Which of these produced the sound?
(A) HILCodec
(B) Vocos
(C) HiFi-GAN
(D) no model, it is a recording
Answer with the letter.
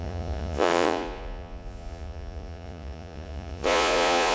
B